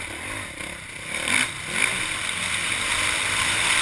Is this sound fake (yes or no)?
no